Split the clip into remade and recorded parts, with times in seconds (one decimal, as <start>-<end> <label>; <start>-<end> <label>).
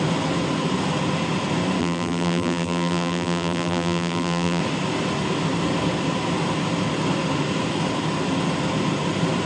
0.0-1.8 recorded; 1.8-4.6 remade; 4.6-9.5 recorded